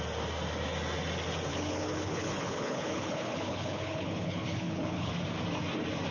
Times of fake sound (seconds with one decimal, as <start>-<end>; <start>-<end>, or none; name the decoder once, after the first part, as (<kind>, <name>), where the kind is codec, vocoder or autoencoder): 1.5-5.1 (codec, HILCodec)